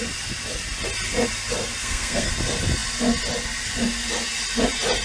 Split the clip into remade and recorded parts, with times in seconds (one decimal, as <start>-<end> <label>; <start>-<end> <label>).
0.0-1.8 recorded; 1.8-2.3 remade; 2.3-5.0 recorded